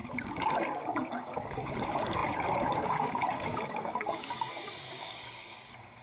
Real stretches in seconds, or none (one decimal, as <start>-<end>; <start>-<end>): none